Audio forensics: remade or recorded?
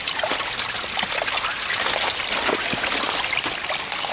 recorded